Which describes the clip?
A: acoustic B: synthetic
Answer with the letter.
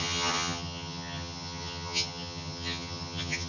B